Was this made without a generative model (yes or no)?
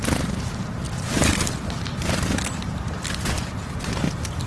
yes